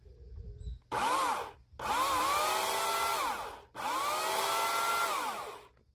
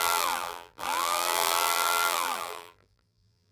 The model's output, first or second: second